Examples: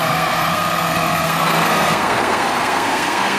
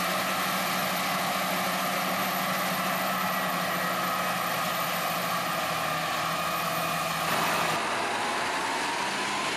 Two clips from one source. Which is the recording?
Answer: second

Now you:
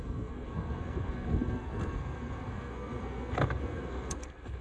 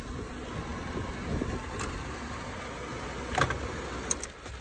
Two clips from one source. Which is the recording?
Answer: second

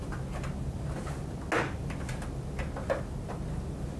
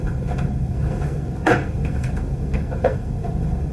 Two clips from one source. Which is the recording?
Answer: first